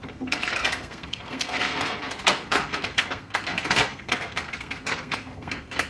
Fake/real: fake